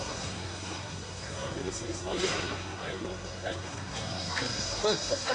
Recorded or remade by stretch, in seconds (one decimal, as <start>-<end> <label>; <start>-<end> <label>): 0.0-5.3 remade